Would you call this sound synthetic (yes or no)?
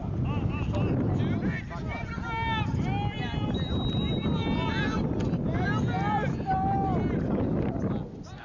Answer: no